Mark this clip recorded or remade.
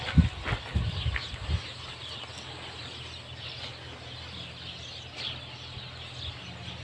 recorded